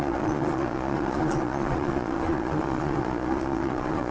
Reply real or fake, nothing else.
fake